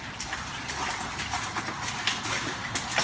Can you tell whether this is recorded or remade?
recorded